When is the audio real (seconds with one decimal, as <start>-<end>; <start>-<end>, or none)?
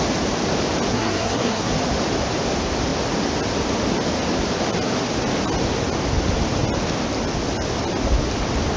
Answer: 0.0-0.9; 1.7-8.8